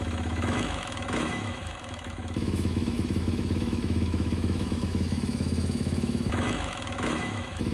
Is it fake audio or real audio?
fake